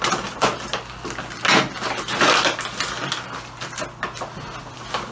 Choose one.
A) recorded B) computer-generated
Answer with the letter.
A